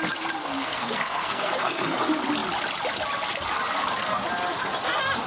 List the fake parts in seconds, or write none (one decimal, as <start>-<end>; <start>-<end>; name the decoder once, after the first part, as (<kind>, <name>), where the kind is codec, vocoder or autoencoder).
0.4-2.0 (codec, SNAC)